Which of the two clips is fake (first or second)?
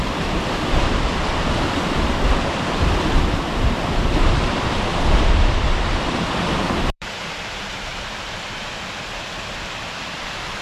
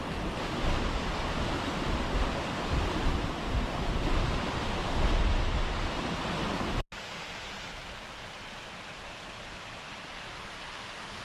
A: first